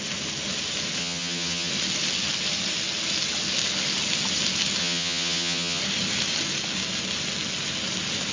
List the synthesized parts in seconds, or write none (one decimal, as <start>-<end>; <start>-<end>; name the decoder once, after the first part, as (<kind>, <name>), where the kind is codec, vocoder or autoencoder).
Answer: 1.0-1.7 (vocoder, HiFi-GAN); 4.8-5.8